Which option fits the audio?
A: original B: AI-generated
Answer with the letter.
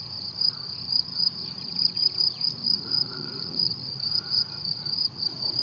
B